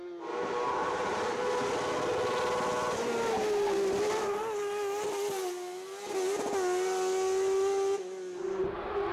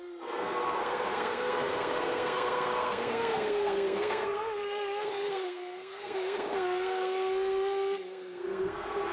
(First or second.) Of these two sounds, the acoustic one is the first